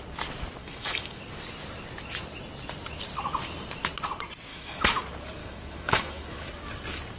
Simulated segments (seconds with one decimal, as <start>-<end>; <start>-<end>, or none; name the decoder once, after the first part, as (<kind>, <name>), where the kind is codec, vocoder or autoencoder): 0.6-1.2 (autoencoder, DAC-VAE); 4.5-5.0; 5.4-6.5